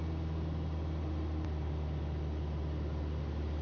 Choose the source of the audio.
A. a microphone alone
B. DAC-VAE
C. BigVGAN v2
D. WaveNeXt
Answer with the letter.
A